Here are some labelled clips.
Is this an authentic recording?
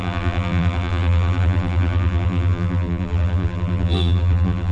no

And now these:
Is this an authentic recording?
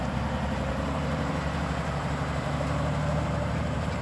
no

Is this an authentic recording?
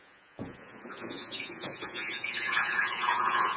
no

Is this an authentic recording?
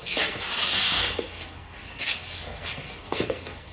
no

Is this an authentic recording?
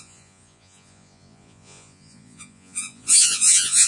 no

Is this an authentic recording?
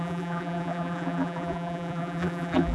no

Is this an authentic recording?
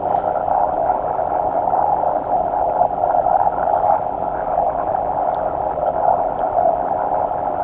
no